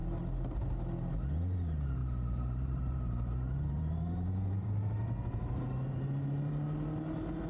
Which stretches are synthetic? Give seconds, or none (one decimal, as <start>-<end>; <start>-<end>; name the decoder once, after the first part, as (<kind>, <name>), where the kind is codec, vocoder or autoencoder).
2.0-6.5 (vocoder, BigVGAN v2)